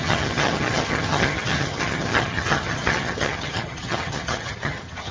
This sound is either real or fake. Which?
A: fake